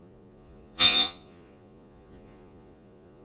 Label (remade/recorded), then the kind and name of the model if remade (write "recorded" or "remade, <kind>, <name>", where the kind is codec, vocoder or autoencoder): remade, vocoder, Vocos